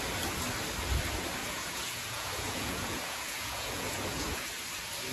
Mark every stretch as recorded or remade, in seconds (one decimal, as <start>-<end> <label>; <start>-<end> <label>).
0.0-1.4 recorded; 1.4-4.5 remade; 4.5-5.1 recorded